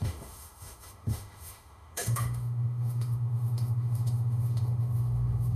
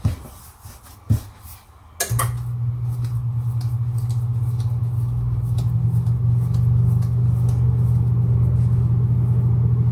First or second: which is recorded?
second